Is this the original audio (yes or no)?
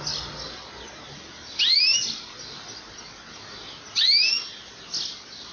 yes